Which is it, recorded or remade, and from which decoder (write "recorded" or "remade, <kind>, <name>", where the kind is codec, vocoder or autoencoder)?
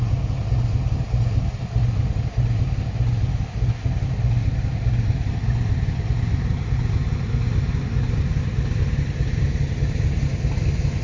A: recorded